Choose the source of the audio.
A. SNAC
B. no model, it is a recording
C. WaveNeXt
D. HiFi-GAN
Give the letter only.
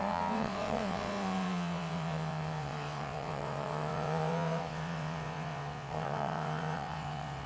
C